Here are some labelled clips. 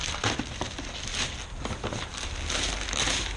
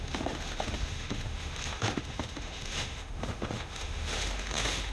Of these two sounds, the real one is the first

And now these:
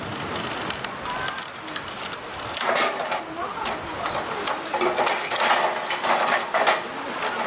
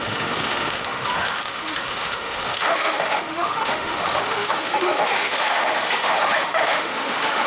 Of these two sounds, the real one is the first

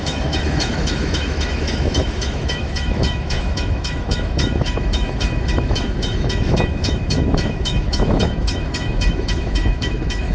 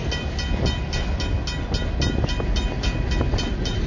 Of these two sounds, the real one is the second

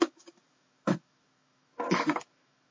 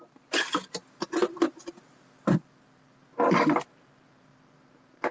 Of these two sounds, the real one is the second